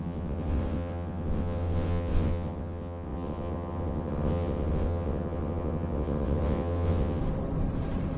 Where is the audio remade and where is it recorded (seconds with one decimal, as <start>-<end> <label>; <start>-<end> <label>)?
0.0-7.2 remade; 7.2-8.2 recorded